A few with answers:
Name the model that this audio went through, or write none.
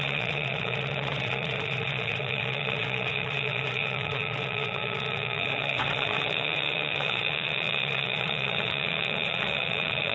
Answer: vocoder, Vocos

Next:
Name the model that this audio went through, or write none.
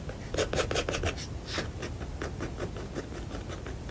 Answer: none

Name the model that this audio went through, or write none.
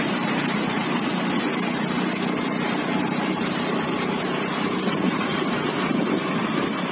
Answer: none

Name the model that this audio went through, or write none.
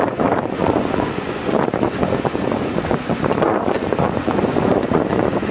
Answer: vocoder, Vocos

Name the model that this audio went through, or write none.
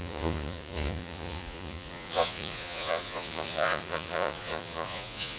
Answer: vocoder, Vocos